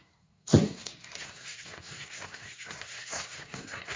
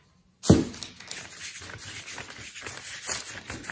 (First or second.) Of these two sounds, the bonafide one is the second